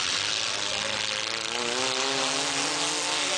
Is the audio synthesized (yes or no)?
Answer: no